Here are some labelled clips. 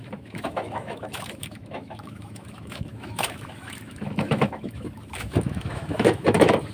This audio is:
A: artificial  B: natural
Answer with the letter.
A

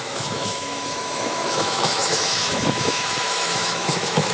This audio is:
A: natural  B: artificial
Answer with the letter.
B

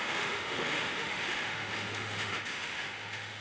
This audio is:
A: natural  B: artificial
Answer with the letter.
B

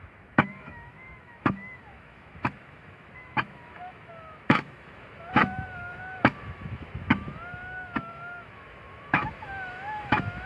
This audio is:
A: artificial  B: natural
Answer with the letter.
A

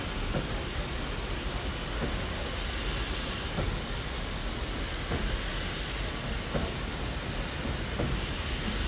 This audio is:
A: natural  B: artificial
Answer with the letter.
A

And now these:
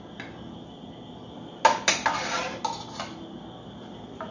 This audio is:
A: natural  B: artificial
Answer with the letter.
A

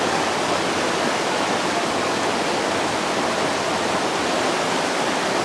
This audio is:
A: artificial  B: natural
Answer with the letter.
B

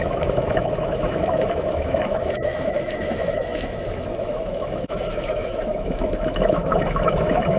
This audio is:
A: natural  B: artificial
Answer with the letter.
B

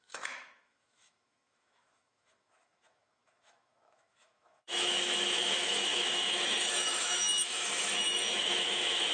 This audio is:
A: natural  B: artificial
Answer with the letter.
B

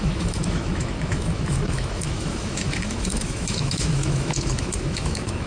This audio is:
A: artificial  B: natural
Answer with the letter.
A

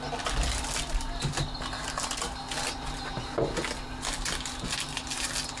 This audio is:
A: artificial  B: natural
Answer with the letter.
B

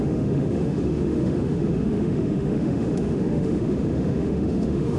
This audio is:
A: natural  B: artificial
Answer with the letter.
B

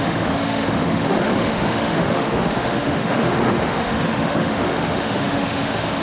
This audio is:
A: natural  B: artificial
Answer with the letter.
B